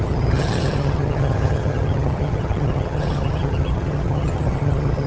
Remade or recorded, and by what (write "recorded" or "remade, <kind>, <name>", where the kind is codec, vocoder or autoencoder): remade, vocoder, HiFi-GAN